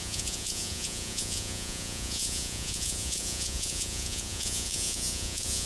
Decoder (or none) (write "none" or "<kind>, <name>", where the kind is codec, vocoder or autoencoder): vocoder, Vocos